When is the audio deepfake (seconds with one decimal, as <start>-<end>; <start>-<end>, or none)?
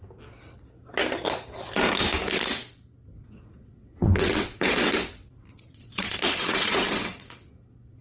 3.1-7.5